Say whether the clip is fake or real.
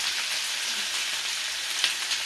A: real